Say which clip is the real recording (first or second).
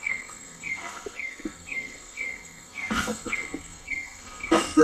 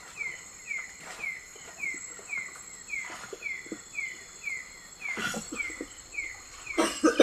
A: second